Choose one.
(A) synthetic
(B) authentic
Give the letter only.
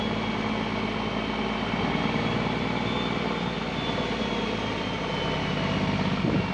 B